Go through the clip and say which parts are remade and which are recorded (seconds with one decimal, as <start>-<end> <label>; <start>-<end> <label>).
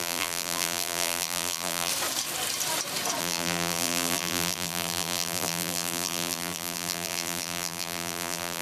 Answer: 0.0-1.9 remade; 1.9-3.2 recorded; 3.2-8.6 remade